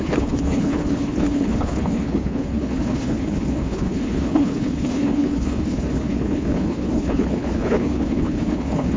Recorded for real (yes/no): no